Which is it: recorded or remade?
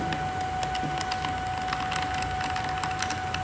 recorded